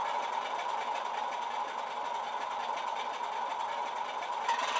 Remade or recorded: recorded